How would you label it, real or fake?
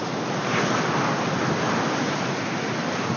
real